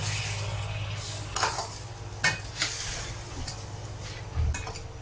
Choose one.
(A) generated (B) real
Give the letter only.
B